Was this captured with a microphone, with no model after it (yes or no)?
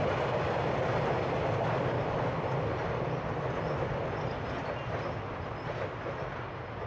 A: yes